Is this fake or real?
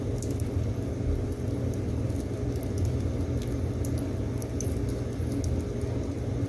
real